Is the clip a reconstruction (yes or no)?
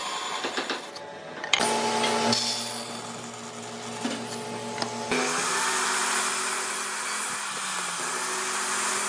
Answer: no